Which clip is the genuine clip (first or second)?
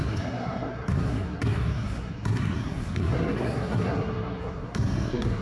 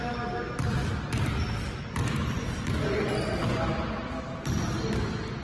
second